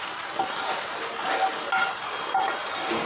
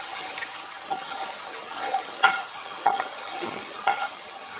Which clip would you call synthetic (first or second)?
second